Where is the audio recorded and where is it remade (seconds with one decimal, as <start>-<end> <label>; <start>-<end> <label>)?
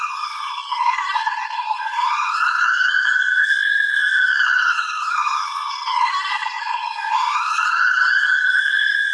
0.0-9.1 remade